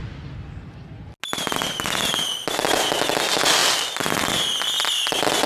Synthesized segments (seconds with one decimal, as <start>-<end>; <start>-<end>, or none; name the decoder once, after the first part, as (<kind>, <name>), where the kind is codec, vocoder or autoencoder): none